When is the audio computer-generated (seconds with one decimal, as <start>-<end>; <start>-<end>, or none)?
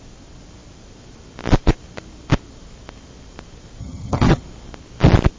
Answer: 3.8-4.4